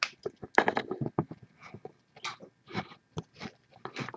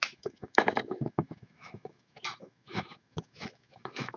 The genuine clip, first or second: first